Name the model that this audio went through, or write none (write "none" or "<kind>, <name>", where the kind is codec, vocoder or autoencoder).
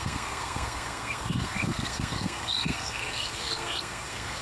codec, SNAC